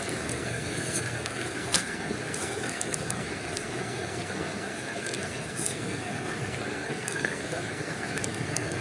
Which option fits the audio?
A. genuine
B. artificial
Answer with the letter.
B